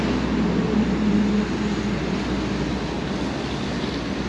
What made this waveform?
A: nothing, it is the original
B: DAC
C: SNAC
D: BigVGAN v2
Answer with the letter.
A